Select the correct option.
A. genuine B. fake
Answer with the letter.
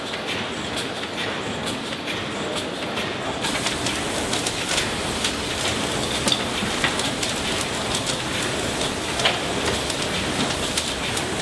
A